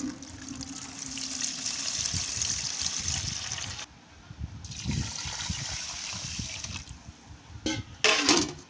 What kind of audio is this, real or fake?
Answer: real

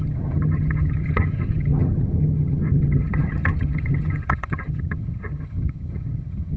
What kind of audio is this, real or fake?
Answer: fake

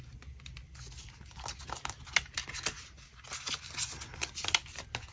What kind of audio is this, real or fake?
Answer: real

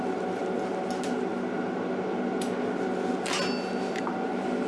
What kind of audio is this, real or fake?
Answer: real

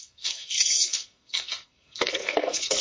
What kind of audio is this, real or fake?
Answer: fake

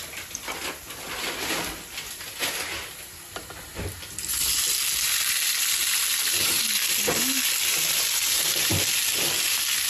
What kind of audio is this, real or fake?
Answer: real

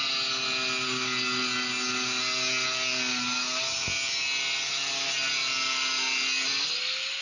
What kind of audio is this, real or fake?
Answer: real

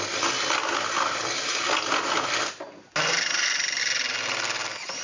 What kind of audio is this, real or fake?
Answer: real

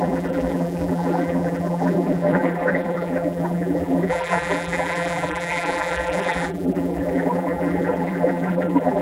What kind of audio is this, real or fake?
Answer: fake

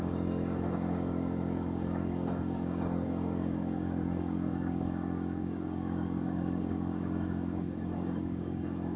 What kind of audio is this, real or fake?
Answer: fake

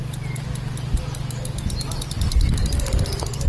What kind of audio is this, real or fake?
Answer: real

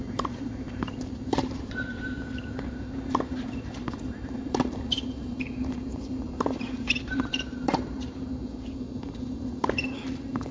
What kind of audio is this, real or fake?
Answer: fake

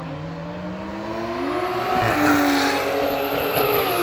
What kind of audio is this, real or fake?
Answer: real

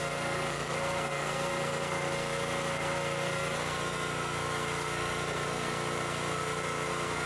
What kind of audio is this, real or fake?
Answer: fake